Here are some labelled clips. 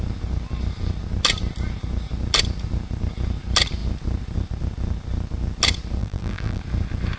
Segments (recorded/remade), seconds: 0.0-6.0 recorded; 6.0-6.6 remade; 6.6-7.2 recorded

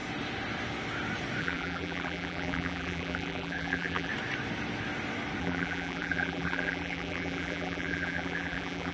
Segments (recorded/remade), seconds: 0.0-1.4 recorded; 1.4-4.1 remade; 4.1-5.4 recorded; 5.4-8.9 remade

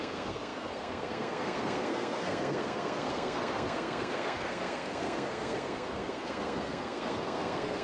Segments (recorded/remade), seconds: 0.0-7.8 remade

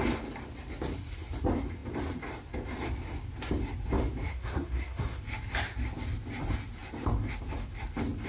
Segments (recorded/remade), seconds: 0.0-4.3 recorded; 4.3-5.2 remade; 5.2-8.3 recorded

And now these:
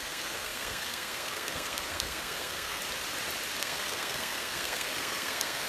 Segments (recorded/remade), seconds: 0.0-2.8 remade; 2.8-3.6 recorded; 3.6-5.7 remade

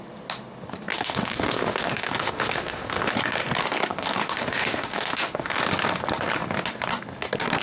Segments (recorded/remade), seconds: 0.0-0.9 recorded; 0.9-3.1 remade; 3.1-3.9 recorded; 3.9-5.6 remade; 5.6-7.6 recorded

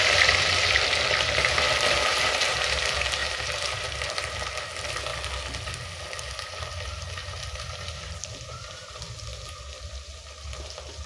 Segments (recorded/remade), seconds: 0.0-2.1 recorded; 2.1-2.8 remade; 2.8-3.2 recorded; 3.2-4.1 remade; 4.1-7.2 recorded; 7.2-8.9 remade; 8.9-11.1 recorded

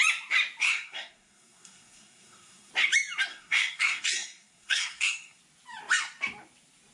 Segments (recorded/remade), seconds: 0.0-0.6 recorded; 0.6-2.7 remade; 2.7-3.3 recorded; 3.3-5.4 remade; 5.4-6.9 recorded